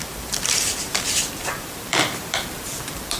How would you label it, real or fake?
fake